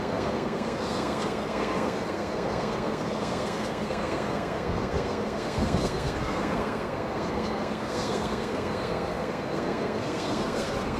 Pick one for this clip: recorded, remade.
remade